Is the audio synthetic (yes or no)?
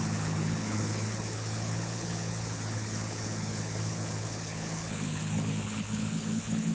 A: yes